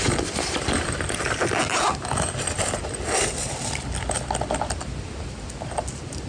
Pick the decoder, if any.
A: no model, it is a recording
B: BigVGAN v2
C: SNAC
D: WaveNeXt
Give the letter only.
A